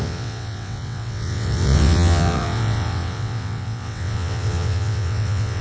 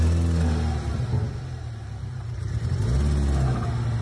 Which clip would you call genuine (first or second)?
second